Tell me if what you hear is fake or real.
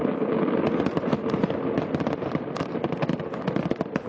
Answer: real